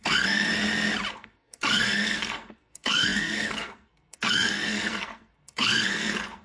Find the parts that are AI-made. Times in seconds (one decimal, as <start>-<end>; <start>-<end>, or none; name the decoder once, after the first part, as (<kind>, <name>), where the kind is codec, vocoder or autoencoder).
0.0-0.5 (codec, SNAC); 1.1-6.4